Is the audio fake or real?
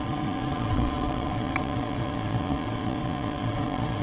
fake